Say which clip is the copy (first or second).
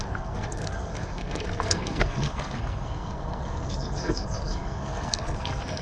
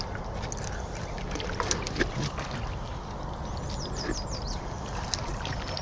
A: first